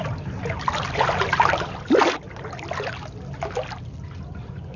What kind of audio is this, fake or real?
real